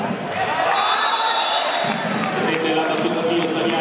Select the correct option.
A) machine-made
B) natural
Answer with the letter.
B